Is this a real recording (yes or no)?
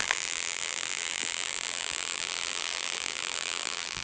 no